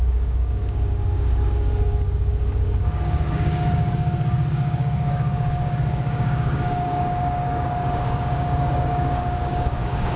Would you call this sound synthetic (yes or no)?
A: yes